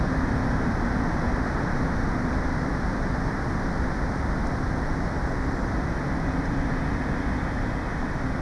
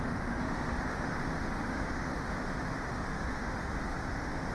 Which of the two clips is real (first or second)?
first